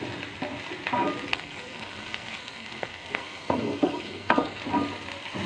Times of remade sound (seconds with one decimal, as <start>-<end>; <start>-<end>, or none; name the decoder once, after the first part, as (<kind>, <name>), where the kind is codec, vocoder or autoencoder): 1.3-4.6 (codec, SNAC)

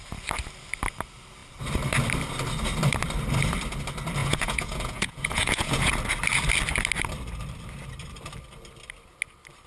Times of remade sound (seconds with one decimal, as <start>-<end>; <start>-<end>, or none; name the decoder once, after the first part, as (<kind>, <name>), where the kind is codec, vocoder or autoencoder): 4.2-5.9 (vocoder, Vocos)

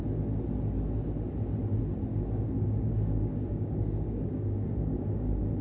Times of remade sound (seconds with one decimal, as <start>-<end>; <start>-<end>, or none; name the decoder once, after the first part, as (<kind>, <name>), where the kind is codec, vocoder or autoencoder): 2.1-5.6 (codec, DAC)

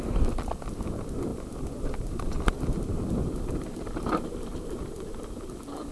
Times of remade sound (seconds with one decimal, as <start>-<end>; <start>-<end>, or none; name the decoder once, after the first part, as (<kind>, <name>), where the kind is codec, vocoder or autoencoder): none

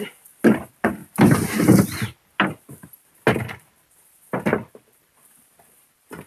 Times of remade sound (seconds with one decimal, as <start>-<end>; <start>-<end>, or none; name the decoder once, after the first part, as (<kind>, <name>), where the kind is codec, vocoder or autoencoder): none

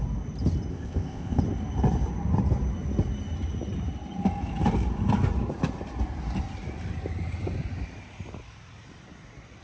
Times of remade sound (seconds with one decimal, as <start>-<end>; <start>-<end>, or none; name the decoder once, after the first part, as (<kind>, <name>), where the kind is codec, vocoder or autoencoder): 0.7-1.4 (codec, ZipCodec)

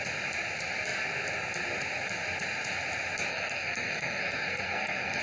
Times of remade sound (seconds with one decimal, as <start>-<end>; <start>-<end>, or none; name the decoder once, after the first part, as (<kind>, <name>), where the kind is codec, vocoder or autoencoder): 3.3-5.2 (codec, SNAC)